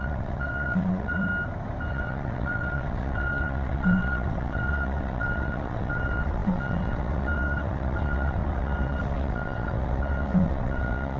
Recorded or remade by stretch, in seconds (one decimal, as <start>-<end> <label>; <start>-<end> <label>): 0.0-1.3 remade; 1.3-1.9 recorded; 1.9-11.2 remade